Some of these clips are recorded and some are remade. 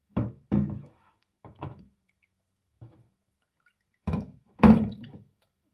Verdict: remade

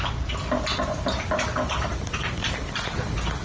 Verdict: recorded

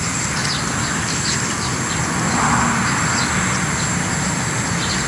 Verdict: recorded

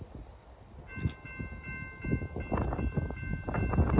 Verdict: recorded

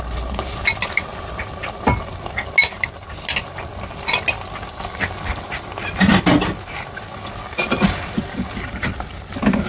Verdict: recorded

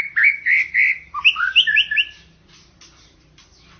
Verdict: remade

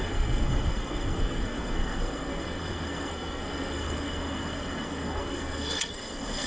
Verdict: remade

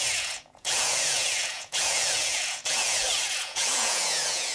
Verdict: remade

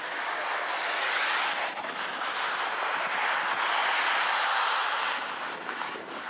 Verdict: recorded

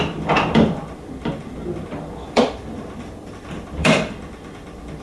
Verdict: remade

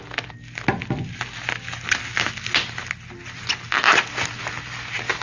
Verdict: recorded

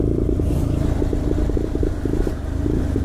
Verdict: recorded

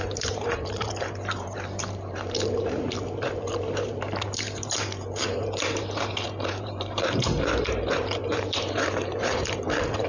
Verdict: remade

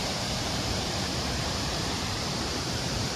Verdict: remade